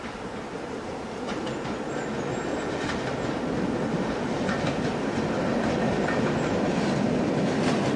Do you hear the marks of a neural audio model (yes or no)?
no